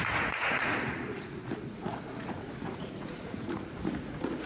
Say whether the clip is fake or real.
fake